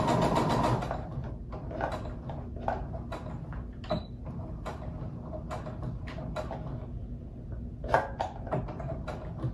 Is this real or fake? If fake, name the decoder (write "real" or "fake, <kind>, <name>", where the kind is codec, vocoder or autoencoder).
real